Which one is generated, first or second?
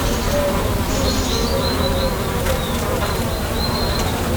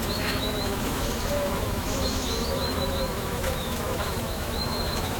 second